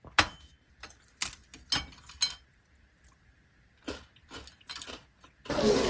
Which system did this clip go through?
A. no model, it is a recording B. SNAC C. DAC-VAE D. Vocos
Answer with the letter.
A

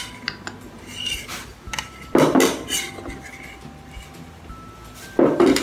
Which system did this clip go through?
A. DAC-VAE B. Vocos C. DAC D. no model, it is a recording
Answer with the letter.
D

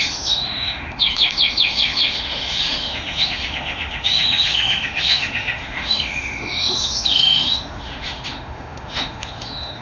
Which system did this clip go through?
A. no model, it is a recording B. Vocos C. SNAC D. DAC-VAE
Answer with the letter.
D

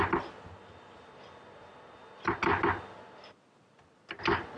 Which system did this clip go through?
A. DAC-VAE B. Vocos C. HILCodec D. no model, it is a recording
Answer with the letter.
D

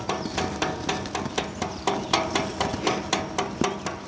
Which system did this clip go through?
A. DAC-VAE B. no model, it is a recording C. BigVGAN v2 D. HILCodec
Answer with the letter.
B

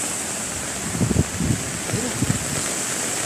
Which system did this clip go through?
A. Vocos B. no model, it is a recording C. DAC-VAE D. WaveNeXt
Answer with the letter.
B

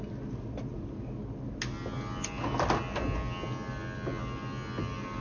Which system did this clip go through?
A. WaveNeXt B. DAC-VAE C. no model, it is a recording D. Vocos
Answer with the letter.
C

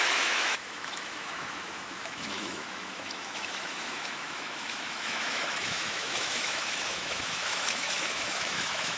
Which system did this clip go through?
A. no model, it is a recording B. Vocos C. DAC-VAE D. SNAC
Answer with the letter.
C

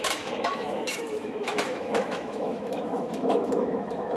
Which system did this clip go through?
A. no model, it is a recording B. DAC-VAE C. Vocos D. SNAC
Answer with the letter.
B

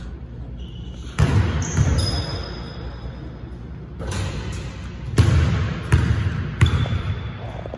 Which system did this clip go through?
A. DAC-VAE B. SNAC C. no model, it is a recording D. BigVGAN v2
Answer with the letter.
C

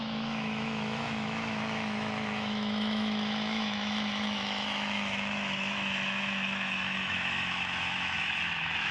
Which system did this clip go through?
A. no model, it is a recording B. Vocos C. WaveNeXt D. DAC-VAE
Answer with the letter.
D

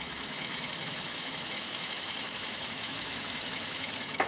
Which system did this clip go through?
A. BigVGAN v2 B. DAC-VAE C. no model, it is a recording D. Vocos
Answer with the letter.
B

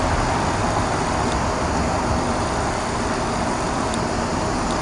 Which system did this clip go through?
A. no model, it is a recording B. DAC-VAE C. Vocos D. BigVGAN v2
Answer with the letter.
A